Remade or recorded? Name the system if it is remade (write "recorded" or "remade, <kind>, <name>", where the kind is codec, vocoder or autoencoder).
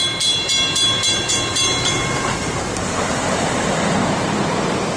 remade, vocoder, BigVGAN v2